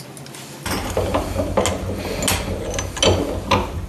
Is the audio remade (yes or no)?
no